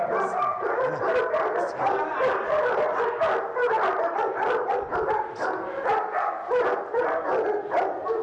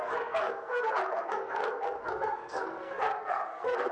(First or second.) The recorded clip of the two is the first